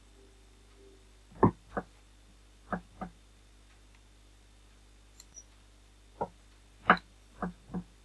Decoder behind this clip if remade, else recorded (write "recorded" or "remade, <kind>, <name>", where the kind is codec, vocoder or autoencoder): recorded